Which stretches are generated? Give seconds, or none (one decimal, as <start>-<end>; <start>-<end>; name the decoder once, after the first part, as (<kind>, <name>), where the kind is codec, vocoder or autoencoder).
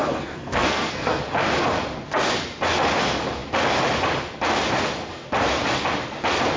0.0-1.2 (codec, SNAC)